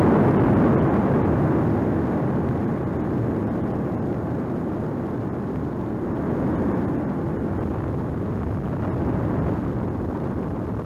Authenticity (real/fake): real